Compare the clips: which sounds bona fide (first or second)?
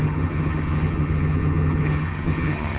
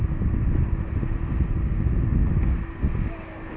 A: second